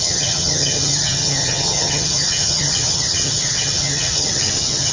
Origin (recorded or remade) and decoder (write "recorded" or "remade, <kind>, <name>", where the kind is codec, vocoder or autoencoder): remade, vocoder, HiFi-GAN